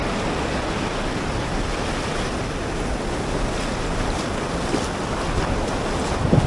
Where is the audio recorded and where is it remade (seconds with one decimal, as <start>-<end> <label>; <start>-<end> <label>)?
0.0-6.5 recorded